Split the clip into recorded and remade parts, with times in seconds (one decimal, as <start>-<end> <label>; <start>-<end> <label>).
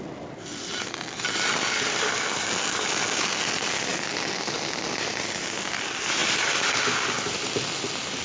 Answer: 0.0-8.2 recorded